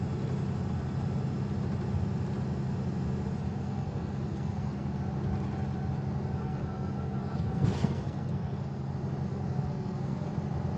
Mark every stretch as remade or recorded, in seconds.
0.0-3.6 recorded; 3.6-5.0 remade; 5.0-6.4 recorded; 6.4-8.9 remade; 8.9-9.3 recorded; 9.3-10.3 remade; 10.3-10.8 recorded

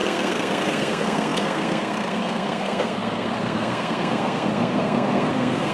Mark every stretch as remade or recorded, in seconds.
0.0-5.7 remade